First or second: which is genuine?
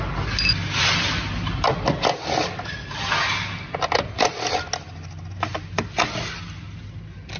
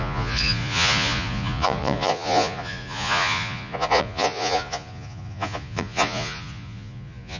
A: first